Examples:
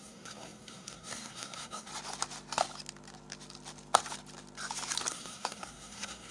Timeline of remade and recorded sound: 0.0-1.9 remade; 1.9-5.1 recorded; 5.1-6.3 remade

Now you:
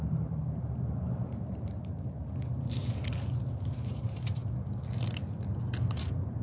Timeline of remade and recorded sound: 0.0-2.8 remade; 2.8-3.5 recorded; 3.5-4.4 remade; 4.4-5.9 recorded; 5.9-6.4 remade

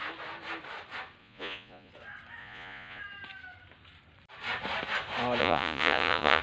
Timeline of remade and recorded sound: 0.0-1.2 recorded; 1.2-1.9 remade; 1.9-2.4 recorded; 2.4-3.0 remade; 3.0-5.4 recorded; 5.4-6.4 remade

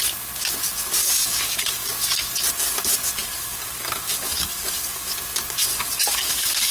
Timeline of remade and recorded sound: 0.0-1.0 recorded; 1.0-1.9 remade; 1.9-3.2 recorded; 3.2-5.1 remade; 5.1-5.7 recorded; 5.7-6.7 remade

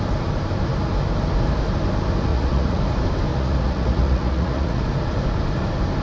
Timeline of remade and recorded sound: 0.0-2.3 recorded; 2.3-2.8 remade; 2.8-3.3 recorded; 3.3-4.8 remade; 4.8-6.0 recorded